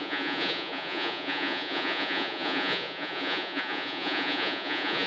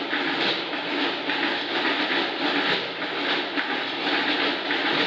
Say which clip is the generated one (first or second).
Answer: first